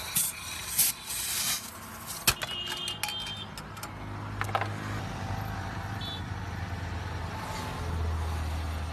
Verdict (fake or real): real